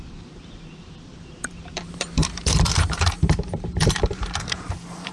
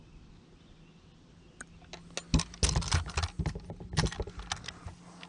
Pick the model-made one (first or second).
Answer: first